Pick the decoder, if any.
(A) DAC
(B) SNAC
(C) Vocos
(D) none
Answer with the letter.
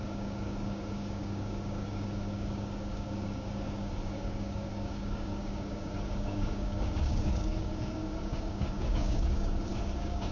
A